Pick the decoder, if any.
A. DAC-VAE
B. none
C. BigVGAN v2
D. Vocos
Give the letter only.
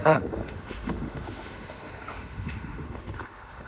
A